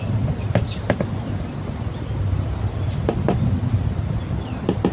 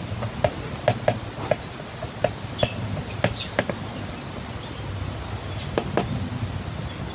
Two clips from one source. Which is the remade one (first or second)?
first